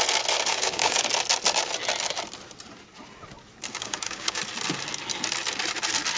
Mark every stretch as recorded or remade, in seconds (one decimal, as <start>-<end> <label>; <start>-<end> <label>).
0.0-0.5 recorded; 0.5-1.0 remade; 1.0-3.7 recorded; 3.7-4.4 remade; 4.4-6.2 recorded